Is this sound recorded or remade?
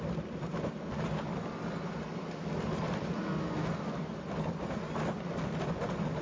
recorded